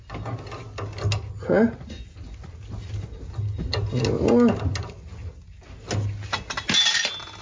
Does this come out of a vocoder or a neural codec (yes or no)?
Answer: no